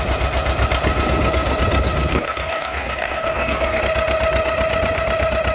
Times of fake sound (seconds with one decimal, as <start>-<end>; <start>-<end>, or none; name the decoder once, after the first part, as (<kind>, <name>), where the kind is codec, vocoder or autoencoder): 2.1-3.8 (codec, DAC)